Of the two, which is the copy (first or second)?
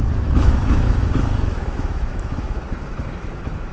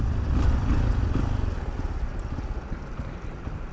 first